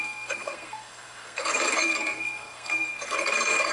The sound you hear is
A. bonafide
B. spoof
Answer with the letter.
B